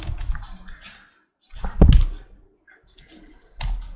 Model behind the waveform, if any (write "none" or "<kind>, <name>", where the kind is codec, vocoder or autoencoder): none